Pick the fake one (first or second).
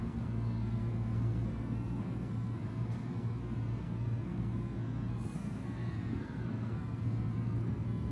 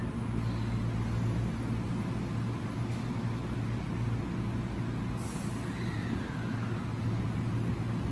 first